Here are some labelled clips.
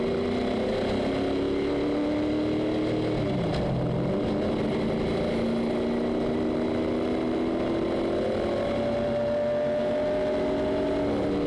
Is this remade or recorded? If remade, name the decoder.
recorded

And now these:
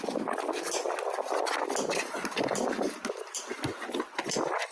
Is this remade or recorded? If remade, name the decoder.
recorded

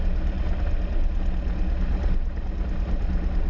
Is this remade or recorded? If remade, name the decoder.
recorded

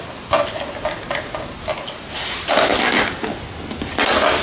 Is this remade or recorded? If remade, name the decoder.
recorded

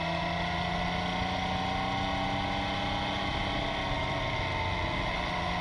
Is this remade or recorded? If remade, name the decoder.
recorded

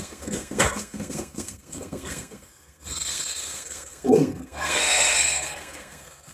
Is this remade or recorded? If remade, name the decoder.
remade, codec, SNAC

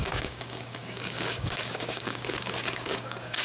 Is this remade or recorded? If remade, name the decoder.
remade, codec, DAC